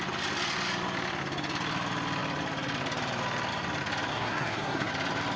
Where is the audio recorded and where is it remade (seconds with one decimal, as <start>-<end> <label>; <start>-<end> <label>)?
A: 0.0-4.1 recorded; 4.1-4.9 remade; 4.9-5.4 recorded